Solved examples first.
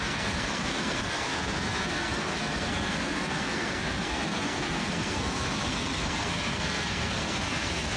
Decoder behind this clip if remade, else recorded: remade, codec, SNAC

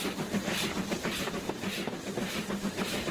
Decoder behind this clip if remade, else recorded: recorded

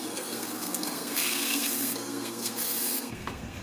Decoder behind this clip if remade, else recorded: remade, codec, SNAC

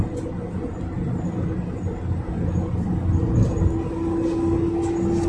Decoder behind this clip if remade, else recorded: recorded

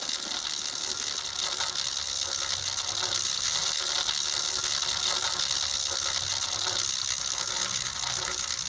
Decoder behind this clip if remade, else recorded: recorded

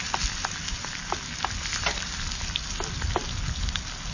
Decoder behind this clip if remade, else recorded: recorded